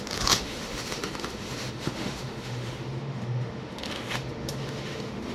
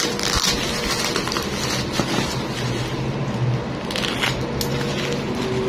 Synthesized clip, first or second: first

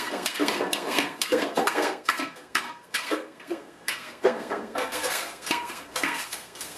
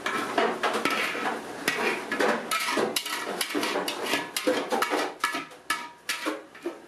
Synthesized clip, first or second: first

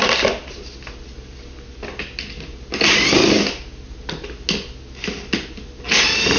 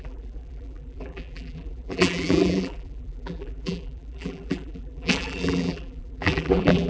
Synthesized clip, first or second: second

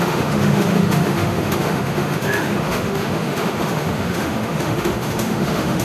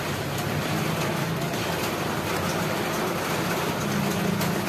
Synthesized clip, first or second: first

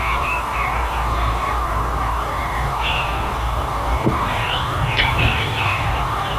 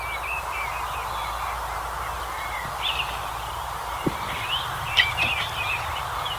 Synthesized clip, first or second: first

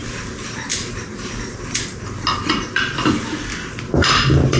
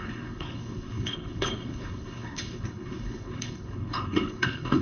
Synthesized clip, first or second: second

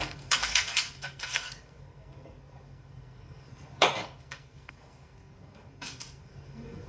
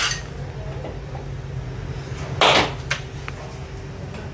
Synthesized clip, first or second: first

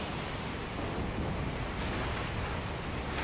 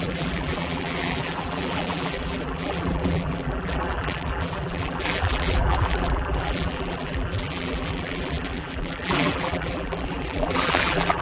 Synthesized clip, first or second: second